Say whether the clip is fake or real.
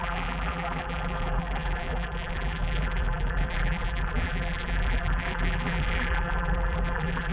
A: fake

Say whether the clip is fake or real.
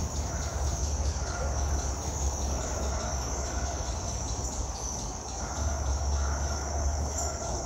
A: fake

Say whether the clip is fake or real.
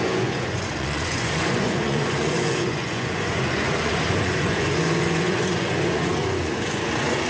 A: fake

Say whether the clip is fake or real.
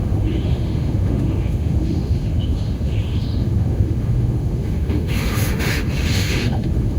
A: fake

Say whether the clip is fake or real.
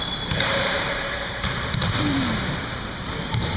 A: fake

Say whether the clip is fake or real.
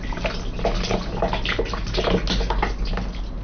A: real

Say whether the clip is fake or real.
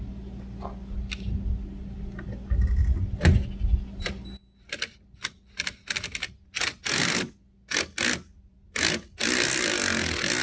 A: real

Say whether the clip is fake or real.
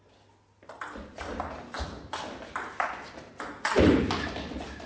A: real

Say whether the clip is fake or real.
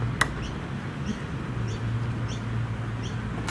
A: real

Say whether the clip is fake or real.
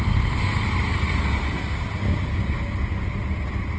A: real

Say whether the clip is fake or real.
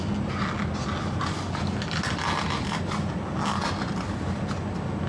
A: real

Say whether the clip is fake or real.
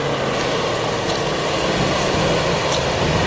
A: real